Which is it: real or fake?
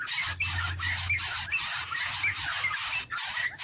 real